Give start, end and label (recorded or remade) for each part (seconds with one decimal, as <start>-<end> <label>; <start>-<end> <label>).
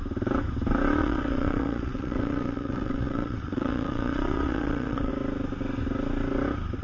0.0-1.0 recorded; 1.0-5.1 remade; 5.1-6.8 recorded